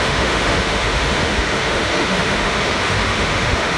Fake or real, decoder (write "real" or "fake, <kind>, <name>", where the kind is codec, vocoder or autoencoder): fake, autoencoder, DAC-VAE